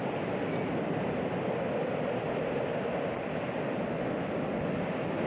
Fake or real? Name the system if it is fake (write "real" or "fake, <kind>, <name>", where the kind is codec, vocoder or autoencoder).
real